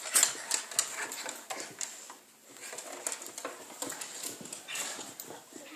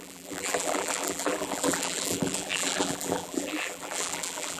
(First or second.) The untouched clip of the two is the first